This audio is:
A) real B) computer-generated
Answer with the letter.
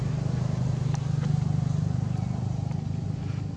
A